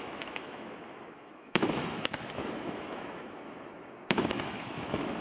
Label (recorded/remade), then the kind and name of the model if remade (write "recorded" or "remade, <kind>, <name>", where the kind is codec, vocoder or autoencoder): remade, autoencoder, DAC-VAE